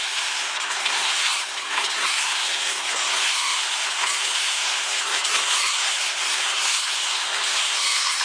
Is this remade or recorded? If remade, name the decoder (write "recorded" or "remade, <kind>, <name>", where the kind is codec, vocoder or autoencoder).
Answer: remade, codec, SNAC